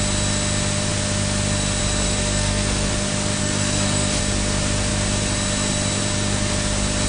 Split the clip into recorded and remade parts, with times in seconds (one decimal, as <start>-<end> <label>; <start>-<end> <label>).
0.0-2.2 recorded; 2.2-2.9 remade; 2.9-3.4 recorded; 3.4-4.2 remade; 4.2-7.1 recorded